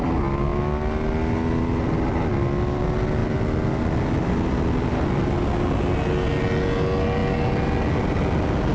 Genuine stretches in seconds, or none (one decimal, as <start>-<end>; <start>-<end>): 0.0-8.7